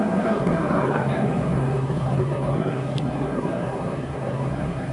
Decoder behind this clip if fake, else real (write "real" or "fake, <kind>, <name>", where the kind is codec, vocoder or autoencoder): fake, codec, SNAC